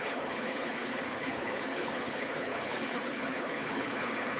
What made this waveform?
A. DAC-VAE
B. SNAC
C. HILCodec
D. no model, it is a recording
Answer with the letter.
C